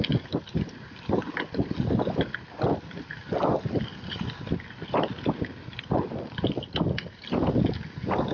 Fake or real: real